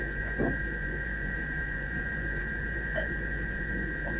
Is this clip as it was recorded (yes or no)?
no